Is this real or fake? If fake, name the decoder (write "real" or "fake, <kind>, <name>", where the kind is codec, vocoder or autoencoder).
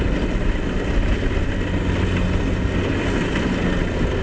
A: real